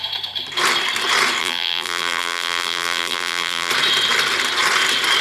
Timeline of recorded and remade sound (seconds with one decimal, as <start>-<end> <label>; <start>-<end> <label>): 0.0-1.4 recorded; 1.4-3.7 remade; 3.7-5.2 recorded